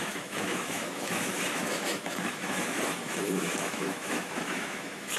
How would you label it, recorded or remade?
remade